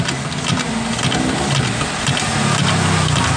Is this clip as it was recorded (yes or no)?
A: yes